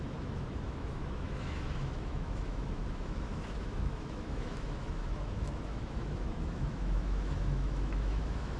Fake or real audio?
fake